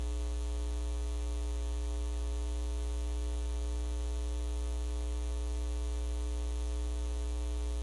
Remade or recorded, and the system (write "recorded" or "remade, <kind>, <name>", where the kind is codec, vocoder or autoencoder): recorded